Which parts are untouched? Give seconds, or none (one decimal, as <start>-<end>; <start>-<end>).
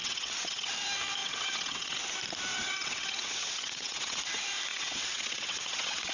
0.7-1.2; 2.0-2.5; 4.2-4.7